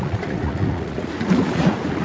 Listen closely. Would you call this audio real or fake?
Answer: fake